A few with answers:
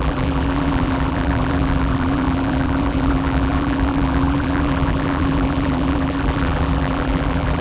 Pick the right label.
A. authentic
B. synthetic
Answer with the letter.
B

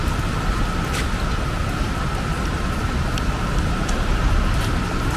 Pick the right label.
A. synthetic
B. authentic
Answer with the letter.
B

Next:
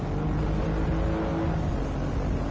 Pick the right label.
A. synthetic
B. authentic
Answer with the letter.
B